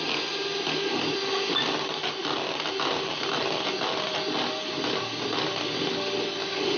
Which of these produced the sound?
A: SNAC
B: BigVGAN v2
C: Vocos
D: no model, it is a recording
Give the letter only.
D